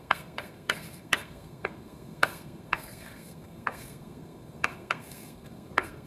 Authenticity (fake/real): fake